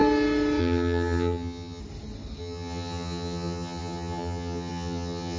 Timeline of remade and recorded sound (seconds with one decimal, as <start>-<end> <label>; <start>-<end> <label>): 0.0-0.6 recorded; 0.6-1.8 remade; 1.8-2.4 recorded; 2.4-5.4 remade